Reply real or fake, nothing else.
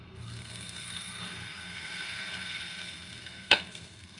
fake